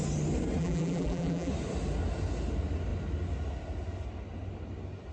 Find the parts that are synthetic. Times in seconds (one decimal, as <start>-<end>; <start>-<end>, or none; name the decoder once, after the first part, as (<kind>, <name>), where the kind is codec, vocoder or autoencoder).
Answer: 0.6-1.5 (vocoder, BigVGAN v2)